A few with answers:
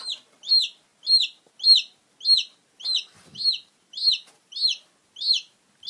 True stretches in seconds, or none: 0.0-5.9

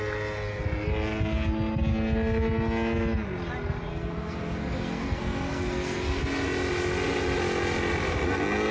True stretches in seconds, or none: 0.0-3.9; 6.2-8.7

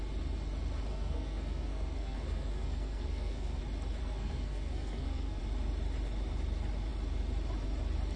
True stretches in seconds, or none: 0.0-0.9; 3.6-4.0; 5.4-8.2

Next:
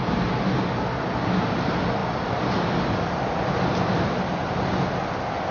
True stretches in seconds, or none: 0.0-5.5

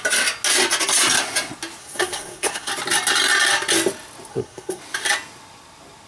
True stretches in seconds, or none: 0.0-1.8; 2.7-4.3; 4.8-6.1

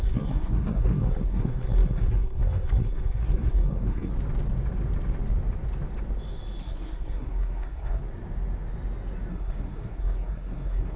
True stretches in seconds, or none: 4.1-6.6; 8.0-9.3

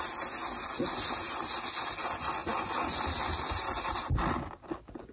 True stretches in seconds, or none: 0.0-5.1